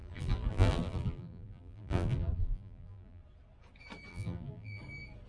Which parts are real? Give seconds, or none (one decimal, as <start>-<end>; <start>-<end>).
3.2-4.1; 4.8-5.3